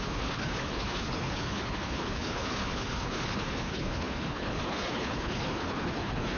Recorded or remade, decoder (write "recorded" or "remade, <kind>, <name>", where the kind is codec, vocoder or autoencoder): remade, codec, HILCodec